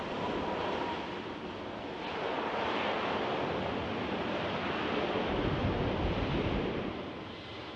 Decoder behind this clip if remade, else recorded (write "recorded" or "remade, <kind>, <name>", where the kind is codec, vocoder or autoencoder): recorded